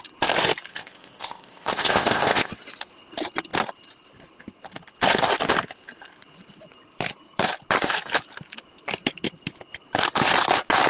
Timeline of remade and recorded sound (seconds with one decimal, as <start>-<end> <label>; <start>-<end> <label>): 0.0-0.7 recorded; 0.7-2.5 remade; 2.5-10.9 recorded